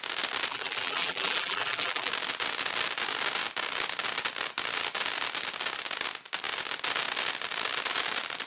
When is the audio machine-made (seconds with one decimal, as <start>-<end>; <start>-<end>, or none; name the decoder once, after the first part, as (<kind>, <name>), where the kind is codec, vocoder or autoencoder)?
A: 0.5-2.1 (vocoder, BigVGAN v2)